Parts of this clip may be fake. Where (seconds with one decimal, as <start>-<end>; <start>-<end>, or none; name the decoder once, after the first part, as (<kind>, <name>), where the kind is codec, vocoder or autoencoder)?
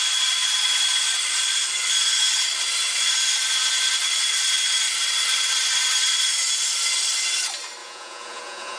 7.8-8.8 (vocoder, Vocos)